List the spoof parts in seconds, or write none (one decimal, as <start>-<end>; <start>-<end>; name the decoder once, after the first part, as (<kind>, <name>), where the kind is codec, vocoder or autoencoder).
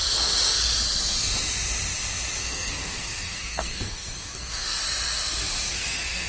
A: 2.4-4.8 (codec, SNAC); 5.7-6.3